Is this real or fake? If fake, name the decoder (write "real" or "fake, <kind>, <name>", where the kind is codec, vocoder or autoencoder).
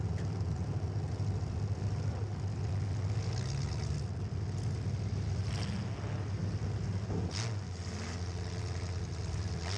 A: real